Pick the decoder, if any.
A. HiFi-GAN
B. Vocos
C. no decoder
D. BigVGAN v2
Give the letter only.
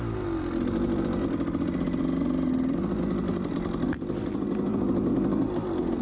C